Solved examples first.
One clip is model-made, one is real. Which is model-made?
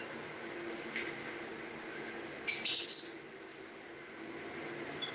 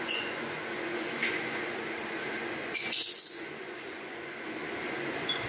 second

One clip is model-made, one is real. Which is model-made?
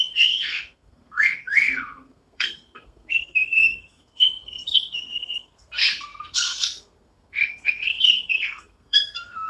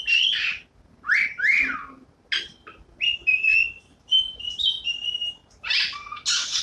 first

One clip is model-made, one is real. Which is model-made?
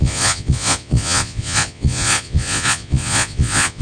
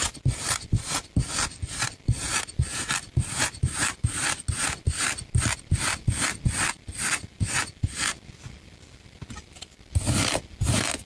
first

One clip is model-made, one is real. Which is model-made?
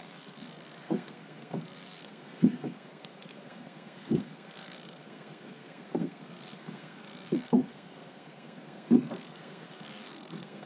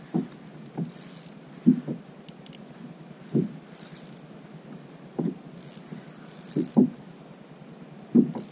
first